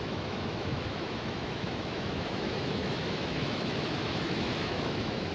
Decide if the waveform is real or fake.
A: fake